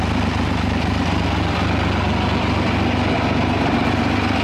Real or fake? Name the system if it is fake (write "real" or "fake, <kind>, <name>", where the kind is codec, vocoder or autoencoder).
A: real